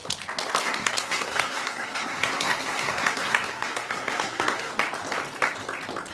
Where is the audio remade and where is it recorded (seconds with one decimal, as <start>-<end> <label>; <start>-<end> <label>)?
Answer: 0.0-0.6 recorded; 0.6-4.7 remade; 4.7-6.1 recorded